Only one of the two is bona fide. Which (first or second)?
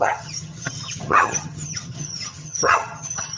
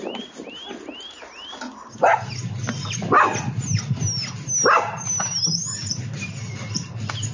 second